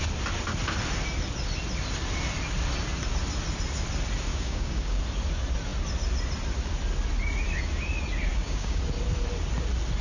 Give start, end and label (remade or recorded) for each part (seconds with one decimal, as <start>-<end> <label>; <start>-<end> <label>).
0.0-4.3 recorded; 4.3-5.0 remade; 5.0-8.3 recorded; 8.3-8.8 remade; 8.8-10.0 recorded